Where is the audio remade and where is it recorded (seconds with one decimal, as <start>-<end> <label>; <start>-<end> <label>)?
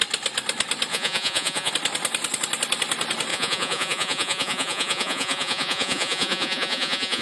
0.0-0.9 recorded; 0.9-1.7 remade; 1.7-3.3 recorded; 3.3-7.2 remade